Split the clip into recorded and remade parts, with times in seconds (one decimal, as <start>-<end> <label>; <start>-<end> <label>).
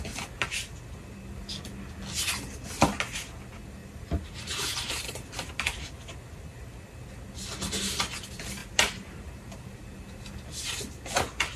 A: 0.0-3.8 recorded; 3.8-5.5 remade; 5.5-8.6 recorded; 8.6-10.2 remade; 10.2-11.6 recorded